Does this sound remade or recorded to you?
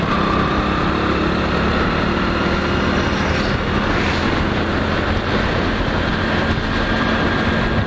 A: recorded